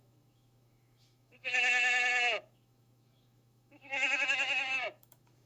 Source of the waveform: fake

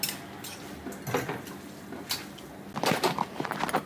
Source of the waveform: real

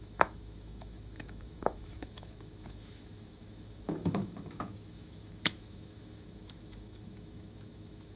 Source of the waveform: fake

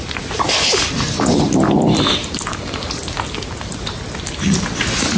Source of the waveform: real